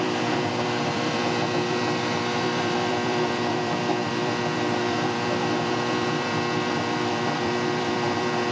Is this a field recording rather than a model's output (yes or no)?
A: no